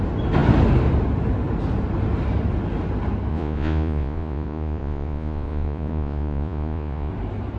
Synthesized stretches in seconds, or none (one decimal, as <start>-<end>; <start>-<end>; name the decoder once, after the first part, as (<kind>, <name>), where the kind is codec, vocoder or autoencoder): 3.3-7.1 (vocoder, Vocos)